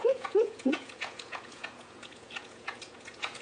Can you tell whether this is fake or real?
fake